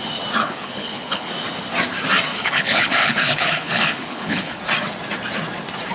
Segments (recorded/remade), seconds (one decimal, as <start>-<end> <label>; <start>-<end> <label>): 0.0-0.4 recorded; 0.4-1.3 remade; 1.3-2.3 recorded; 2.3-4.6 remade; 4.6-5.9 recorded